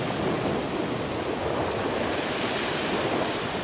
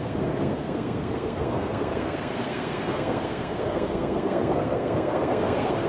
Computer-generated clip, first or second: second